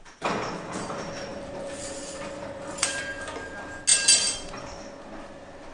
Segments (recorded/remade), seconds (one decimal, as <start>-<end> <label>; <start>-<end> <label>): 0.0-1.3 recorded; 1.3-3.0 remade; 3.0-5.7 recorded